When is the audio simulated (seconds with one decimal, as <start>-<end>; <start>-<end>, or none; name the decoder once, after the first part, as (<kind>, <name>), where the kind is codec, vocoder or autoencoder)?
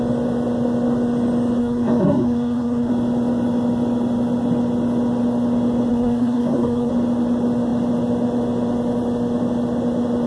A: 1.6-2.9 (codec, SNAC); 5.9-6.9